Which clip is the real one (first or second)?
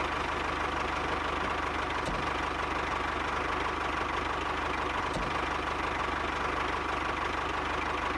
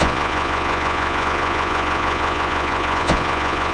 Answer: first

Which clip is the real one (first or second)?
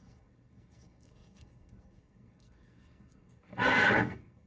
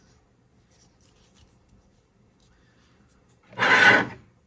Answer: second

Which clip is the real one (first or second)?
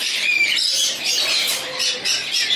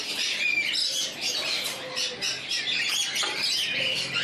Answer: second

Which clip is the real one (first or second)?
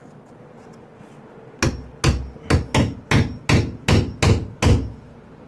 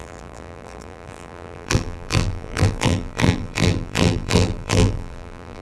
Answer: first